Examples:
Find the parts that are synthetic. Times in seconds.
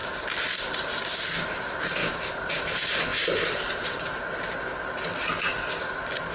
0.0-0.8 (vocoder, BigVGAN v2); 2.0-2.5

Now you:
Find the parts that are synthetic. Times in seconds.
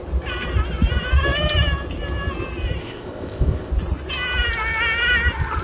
2.8-3.7 (codec, ZipCodec)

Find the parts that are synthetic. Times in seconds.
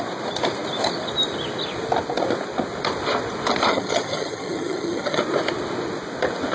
3.7-5.2 (vocoder, HiFi-GAN)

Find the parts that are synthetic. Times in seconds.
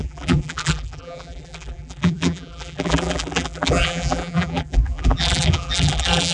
0.0-6.3 (vocoder, BigVGAN v2)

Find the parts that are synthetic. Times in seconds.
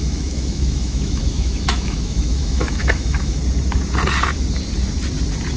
0.0-3.4 (autoencoder, DAC-VAE)